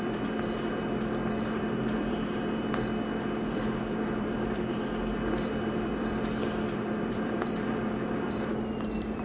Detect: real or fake fake